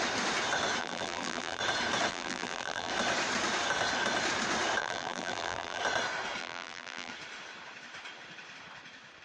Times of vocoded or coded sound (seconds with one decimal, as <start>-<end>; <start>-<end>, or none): 0.8-1.6; 2.1-2.9; 4.8-5.8; 6.4-7.1